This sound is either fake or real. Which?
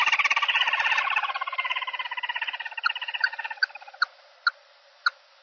real